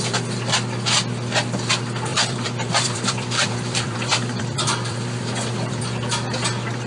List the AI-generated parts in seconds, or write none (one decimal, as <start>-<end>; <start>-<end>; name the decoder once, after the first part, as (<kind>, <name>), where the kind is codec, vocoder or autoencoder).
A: 2.1-5.8 (vocoder, BigVGAN v2)

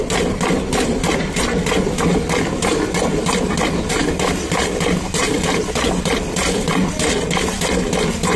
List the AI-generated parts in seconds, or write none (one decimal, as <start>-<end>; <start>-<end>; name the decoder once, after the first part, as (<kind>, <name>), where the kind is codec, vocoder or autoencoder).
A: none

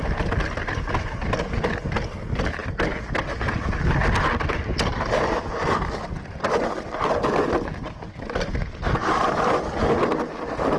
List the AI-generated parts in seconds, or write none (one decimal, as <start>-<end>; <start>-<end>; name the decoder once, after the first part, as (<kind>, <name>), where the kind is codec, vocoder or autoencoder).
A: 4.9-5.5 (vocoder, BigVGAN v2)

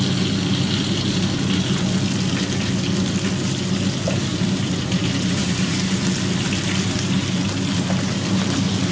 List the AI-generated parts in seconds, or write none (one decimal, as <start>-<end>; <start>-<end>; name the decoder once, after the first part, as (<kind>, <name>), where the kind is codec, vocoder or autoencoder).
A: 4.3-6.0 (vocoder, BigVGAN v2)

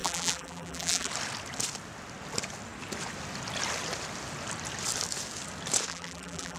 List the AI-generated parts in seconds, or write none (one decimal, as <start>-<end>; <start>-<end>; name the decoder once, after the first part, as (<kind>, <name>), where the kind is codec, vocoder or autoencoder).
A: 0.0-1.1 (vocoder, BigVGAN v2); 5.9-6.6

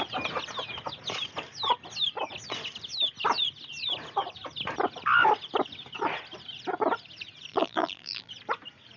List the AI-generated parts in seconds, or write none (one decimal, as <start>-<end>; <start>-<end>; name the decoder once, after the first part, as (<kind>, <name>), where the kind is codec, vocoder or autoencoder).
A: 7.5-8.3 (vocoder, BigVGAN v2)

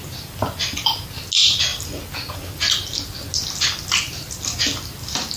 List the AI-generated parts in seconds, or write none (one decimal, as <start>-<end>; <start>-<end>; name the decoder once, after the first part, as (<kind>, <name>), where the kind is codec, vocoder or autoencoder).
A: none

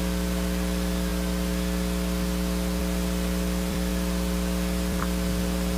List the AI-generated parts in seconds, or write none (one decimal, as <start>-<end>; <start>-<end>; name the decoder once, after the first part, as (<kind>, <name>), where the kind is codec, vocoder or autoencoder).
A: 0.0-1.1 (vocoder, BigVGAN v2); 2.8-5.8